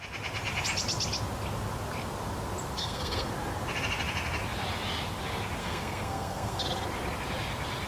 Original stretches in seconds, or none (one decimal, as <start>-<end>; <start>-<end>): 0.0-2.8; 3.3-5.6; 6.6-7.9